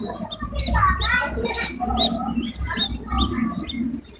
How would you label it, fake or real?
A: real